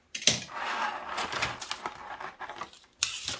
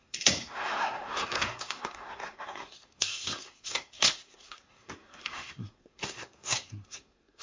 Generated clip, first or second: second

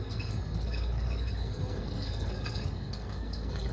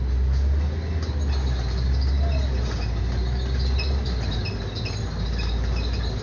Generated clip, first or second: first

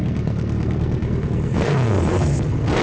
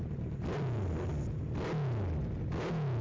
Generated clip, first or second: first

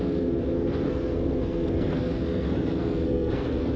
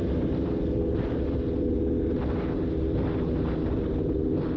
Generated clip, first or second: first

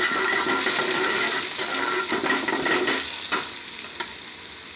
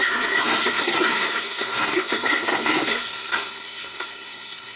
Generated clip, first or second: second